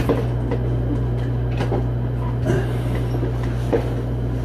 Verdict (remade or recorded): recorded